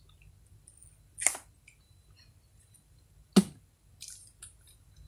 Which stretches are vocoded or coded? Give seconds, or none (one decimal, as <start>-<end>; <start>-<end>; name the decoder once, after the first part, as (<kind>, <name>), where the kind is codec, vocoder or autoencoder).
none